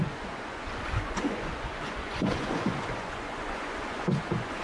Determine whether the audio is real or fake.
fake